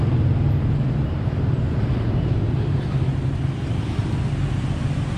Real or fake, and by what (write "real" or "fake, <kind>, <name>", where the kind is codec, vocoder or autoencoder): real